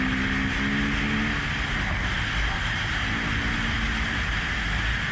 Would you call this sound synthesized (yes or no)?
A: no